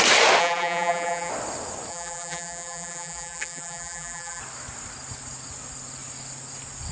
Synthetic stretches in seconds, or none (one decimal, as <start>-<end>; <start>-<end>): 0.4-1.3; 1.9-4.4